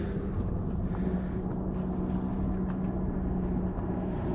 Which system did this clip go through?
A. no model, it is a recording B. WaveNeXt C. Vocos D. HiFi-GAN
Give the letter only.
A